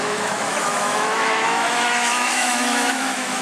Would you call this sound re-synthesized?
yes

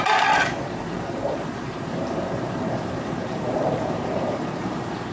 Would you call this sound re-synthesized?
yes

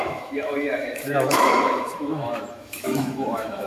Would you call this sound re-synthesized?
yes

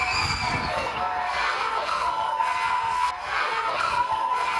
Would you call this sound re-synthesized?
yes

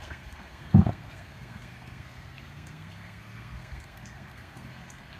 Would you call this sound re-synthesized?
yes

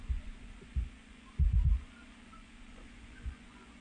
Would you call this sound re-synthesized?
yes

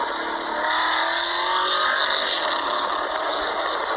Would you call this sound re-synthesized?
no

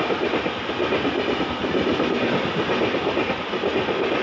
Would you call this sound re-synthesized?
no